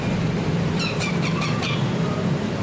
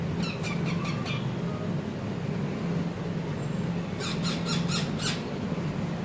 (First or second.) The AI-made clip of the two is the first